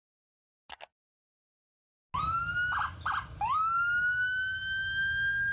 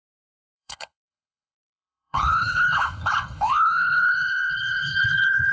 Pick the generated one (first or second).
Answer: second